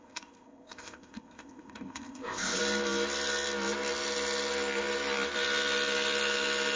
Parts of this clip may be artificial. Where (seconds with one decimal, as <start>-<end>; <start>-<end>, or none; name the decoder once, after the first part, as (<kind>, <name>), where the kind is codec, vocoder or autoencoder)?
0.0-2.6 (codec, ZipCodec)